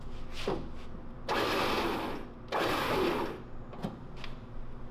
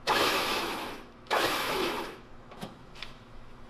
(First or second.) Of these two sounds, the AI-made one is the second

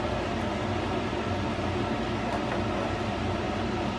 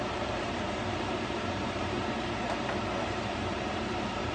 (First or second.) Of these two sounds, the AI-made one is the second